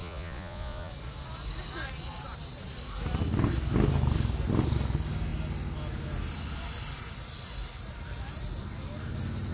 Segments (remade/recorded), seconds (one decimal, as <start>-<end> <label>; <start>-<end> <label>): 0.0-0.9 remade; 0.9-9.5 recorded